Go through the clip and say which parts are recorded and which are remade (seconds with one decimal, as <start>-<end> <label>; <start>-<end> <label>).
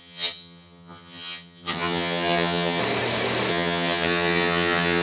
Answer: 0.0-2.8 remade; 2.8-3.5 recorded; 3.5-5.0 remade